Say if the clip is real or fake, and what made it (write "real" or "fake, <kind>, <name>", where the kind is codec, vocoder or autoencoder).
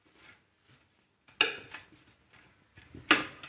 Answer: real